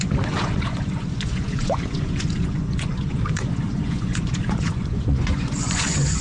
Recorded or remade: remade